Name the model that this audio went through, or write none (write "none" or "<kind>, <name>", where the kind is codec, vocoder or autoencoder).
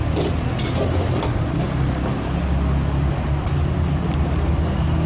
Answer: none